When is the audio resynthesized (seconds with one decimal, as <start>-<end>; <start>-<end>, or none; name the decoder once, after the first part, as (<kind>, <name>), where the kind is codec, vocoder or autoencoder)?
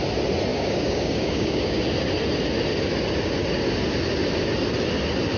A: 0.5-1.8 (codec, DAC)